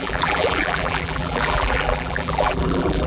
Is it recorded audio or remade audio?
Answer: remade